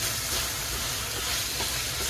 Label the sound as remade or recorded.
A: recorded